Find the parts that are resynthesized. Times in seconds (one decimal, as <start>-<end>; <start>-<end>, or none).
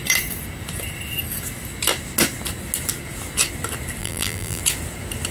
4.0-4.6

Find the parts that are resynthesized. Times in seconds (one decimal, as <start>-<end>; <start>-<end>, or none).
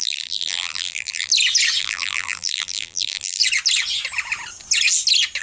0.0-1.3; 1.8-3.4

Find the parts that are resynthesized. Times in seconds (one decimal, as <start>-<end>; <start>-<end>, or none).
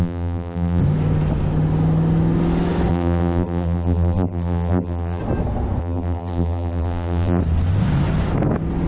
0.0-0.8; 2.9-5.2; 5.8-7.4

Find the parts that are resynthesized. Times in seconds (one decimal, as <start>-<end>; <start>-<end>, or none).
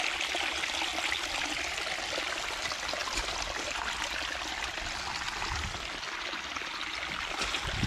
none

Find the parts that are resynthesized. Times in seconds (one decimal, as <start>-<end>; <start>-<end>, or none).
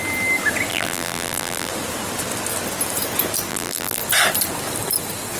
0.7-1.7; 3.5-4.0